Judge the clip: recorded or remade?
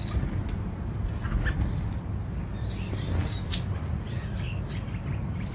recorded